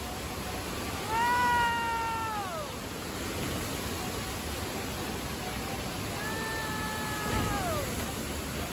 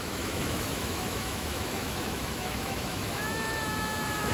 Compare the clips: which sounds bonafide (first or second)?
first